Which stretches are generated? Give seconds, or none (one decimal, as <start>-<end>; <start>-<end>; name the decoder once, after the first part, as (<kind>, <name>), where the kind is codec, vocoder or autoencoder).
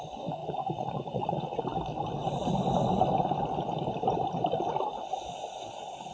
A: 0.4-1.6 (vocoder, Vocos)